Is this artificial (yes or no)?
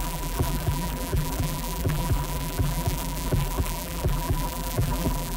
yes